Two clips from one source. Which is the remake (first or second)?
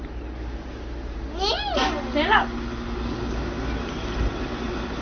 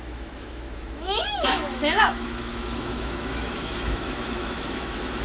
second